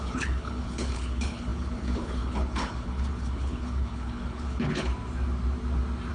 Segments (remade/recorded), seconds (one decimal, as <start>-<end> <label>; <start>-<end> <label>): 0.0-4.9 remade; 4.9-6.1 recorded

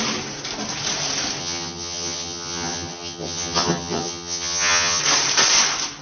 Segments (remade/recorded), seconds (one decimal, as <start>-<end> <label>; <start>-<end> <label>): 0.0-1.4 recorded; 1.4-5.0 remade; 5.0-6.0 recorded

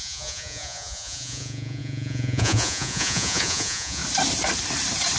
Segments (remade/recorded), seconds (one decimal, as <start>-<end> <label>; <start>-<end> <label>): 0.0-4.0 remade; 4.0-5.2 recorded

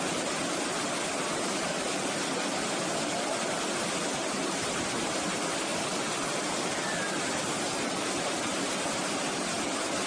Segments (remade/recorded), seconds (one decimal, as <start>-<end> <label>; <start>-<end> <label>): 0.0-10.1 recorded

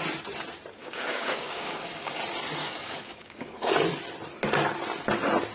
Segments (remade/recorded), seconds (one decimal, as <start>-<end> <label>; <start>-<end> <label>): 0.0-0.8 recorded; 0.8-2.2 remade; 2.2-2.6 recorded; 2.6-3.7 remade; 3.7-5.5 recorded

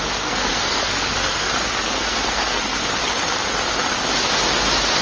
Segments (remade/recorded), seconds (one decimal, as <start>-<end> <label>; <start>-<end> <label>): 0.0-3.0 remade; 3.0-5.0 recorded

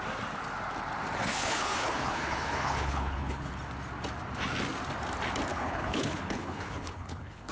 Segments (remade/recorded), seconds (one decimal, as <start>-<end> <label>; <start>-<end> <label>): 0.0-1.2 recorded; 1.2-3.5 remade; 3.5-5.5 recorded; 5.5-7.5 remade